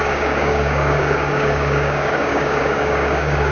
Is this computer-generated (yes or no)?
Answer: yes